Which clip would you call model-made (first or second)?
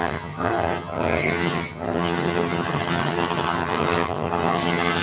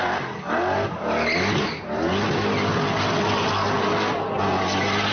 first